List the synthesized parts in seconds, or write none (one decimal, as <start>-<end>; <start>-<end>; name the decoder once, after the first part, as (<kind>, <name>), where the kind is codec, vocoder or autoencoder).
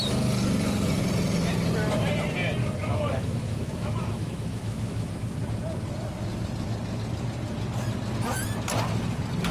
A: 2.6-5.1 (autoencoder, DAC-VAE)